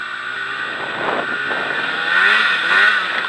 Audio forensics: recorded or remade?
recorded